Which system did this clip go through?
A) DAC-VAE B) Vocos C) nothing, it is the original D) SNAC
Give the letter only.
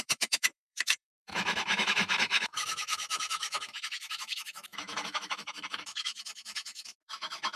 A